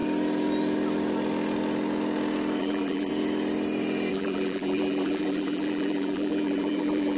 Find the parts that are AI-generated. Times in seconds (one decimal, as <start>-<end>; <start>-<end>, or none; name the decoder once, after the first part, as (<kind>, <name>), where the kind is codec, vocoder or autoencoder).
2.6-3.1 (vocoder, BigVGAN v2); 4.1-7.2